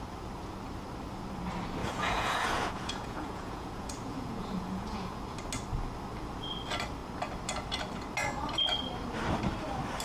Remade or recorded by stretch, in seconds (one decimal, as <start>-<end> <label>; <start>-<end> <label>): 0.0-1.8 recorded; 1.8-5.2 remade; 5.2-10.0 recorded